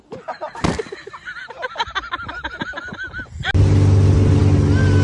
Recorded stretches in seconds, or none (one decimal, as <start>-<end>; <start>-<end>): 0.0-5.0